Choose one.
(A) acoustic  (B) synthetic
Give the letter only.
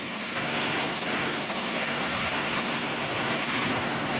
B